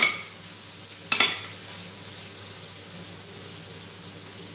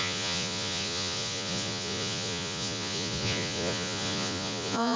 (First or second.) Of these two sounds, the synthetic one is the second